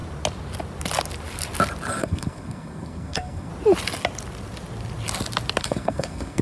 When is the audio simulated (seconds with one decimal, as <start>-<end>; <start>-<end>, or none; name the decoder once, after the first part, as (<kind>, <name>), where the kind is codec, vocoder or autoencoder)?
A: 1.9-3.5 (codec, SNAC); 5.6-6.4

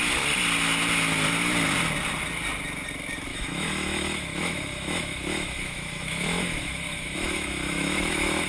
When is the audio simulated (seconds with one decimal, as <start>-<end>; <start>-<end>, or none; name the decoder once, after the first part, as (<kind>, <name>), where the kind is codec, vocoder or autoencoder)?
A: 3.3-8.5 (autoencoder, DAC-VAE)

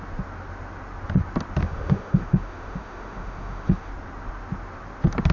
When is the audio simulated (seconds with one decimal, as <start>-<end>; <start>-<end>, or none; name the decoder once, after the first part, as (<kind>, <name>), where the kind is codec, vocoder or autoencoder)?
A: 1.6-3.9 (autoencoder, DAC-VAE)